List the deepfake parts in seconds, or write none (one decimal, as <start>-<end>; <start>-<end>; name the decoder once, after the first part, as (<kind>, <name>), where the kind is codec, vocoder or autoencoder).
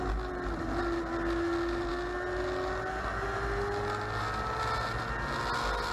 none